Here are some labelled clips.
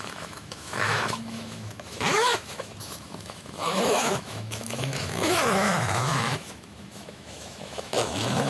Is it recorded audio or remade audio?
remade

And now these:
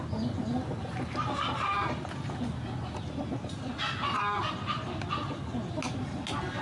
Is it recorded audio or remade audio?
recorded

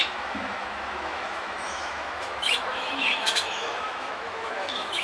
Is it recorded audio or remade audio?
remade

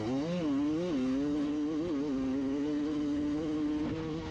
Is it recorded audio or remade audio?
recorded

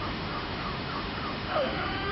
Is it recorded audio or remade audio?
remade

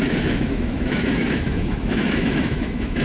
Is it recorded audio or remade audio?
remade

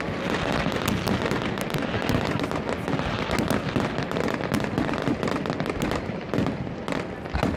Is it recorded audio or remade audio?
recorded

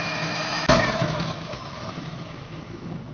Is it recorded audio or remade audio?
remade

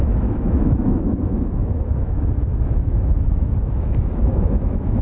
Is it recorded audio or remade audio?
remade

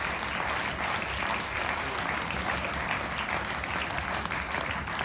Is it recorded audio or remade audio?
recorded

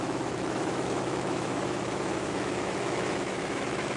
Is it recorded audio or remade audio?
remade